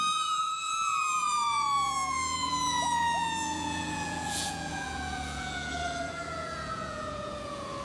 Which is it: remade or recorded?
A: remade